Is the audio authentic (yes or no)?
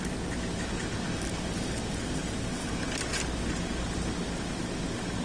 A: yes